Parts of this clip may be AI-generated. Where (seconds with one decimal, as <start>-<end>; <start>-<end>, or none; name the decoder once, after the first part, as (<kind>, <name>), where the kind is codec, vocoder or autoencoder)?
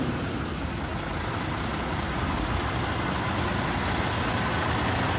none